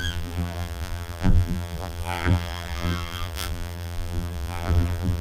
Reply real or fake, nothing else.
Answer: fake